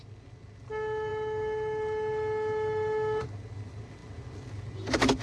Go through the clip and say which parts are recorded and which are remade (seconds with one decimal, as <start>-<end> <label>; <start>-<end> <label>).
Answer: 0.0-5.2 recorded